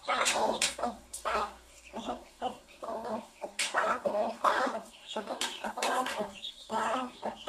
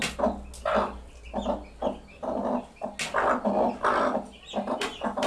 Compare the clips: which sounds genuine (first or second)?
second